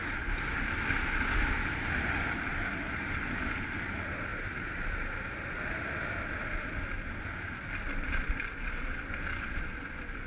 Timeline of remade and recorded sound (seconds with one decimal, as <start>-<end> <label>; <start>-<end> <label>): 0.0-10.3 recorded